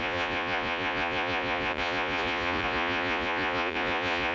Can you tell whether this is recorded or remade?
remade